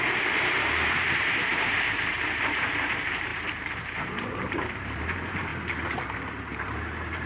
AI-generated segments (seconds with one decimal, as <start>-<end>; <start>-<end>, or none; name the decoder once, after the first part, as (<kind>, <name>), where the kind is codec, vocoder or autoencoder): 0.0-5.5 (vocoder, BigVGAN v2); 6.1-7.3